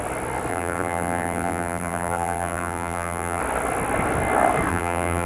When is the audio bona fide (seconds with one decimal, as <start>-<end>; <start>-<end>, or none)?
0.0-0.5; 3.4-4.7